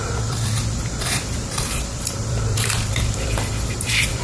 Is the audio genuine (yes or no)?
no